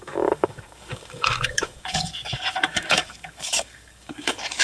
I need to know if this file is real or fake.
fake